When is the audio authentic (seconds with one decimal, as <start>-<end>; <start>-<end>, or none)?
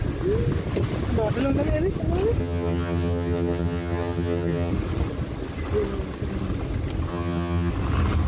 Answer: 0.0-2.4; 4.7-7.1; 7.7-8.3